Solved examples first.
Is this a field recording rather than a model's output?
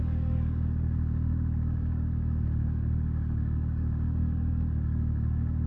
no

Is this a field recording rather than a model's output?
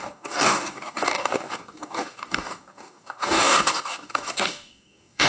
no